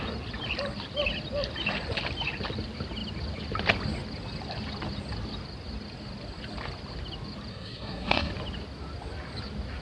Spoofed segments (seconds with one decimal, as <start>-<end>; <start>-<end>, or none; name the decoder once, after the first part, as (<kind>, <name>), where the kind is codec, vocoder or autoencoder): 7.5-8.3 (codec, SNAC)